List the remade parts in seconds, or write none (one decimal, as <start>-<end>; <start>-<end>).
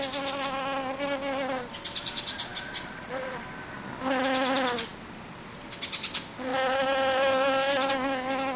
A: none